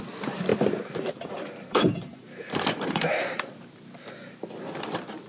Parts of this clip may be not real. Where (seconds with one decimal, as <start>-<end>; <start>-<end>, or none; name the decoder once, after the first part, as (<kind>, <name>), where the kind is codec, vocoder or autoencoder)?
0.5-3.7 (vocoder, BigVGAN v2)